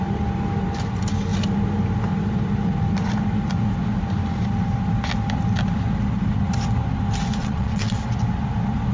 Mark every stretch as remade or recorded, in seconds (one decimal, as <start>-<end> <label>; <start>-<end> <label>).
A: 0.0-7.4 recorded; 7.4-8.0 remade; 8.0-8.9 recorded